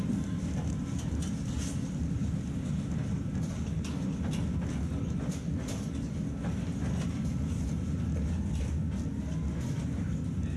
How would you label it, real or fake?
real